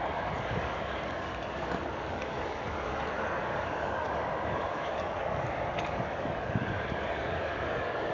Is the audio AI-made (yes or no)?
yes